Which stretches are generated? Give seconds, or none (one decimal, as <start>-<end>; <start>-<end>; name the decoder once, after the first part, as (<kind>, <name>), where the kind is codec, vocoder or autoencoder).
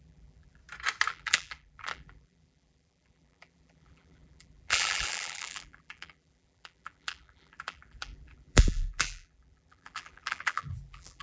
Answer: 0.0-0.6 (vocoder, BigVGAN v2); 1.1-11.2